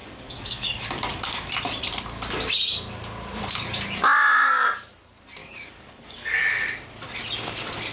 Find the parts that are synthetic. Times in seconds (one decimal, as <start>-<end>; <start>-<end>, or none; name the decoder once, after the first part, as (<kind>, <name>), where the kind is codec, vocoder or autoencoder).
0.0-1.5 (codec, DAC); 5.4-6.4